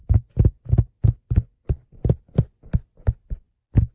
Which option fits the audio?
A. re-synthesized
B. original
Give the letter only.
B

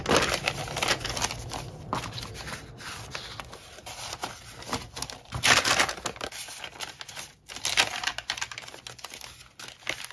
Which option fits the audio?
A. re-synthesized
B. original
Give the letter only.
B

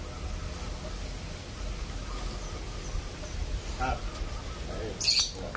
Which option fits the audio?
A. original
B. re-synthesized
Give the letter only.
A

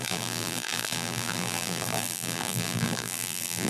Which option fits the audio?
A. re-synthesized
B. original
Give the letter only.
A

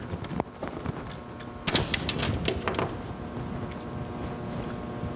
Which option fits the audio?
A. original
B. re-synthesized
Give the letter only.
A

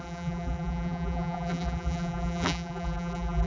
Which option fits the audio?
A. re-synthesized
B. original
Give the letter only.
A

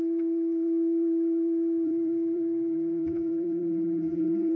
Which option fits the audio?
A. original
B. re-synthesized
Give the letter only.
B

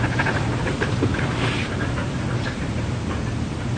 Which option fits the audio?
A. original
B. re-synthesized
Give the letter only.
B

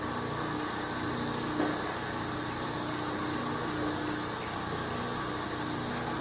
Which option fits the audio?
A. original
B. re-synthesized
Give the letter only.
A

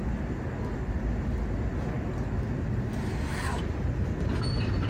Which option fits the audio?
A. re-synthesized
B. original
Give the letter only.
B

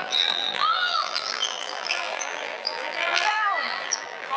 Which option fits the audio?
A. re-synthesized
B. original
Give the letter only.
A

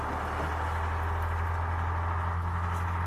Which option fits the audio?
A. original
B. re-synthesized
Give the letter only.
A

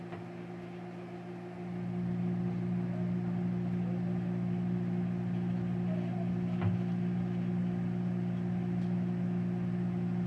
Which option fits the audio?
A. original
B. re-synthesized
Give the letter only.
A